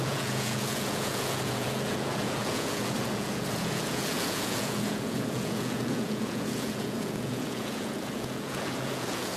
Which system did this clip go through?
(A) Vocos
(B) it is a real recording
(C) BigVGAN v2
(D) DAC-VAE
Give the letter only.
A